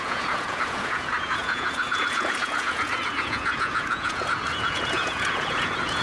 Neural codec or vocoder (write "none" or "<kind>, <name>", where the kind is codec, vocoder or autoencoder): vocoder, Vocos